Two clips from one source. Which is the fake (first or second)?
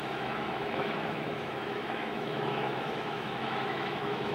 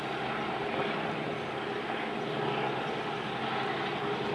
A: first